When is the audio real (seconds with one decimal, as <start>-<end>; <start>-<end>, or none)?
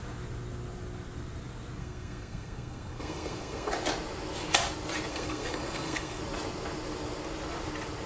0.0-1.8; 3.7-5.1; 6.2-8.1